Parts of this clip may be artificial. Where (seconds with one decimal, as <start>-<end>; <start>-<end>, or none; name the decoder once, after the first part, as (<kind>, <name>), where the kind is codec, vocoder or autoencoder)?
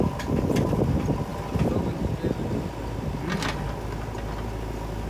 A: none